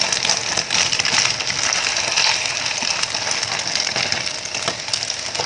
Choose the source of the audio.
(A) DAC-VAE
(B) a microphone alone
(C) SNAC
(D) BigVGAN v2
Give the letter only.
B